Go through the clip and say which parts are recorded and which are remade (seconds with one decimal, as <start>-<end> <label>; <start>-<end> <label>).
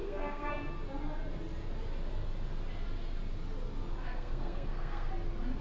0.0-0.5 remade; 0.5-4.0 recorded; 4.0-5.1 remade; 5.1-5.6 recorded